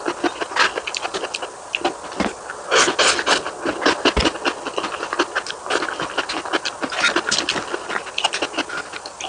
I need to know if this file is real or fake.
real